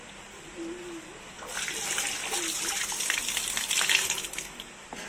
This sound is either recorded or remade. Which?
recorded